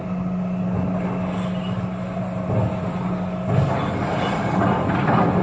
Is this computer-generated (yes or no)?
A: no